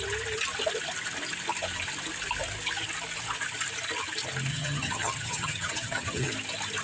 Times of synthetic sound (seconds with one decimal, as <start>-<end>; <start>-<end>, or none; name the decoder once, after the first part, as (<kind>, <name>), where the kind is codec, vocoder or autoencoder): 4.5-6.3 (vocoder, HiFi-GAN)